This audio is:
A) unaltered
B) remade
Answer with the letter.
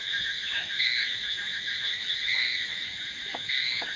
B